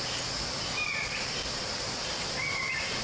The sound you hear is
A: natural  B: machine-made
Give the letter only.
A